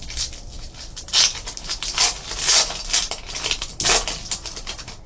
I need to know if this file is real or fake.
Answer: real